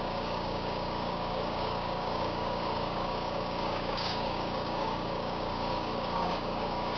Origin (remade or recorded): remade